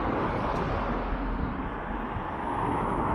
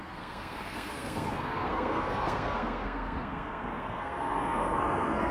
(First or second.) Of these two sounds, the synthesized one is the second